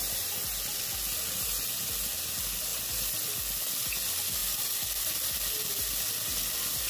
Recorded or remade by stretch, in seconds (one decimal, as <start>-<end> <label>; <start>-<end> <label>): 0.0-6.9 recorded